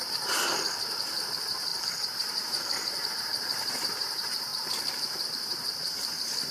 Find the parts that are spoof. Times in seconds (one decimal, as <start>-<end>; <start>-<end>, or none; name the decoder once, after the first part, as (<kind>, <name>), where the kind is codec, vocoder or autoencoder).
0.0-4.5 (vocoder, BigVGAN v2); 5.3-6.5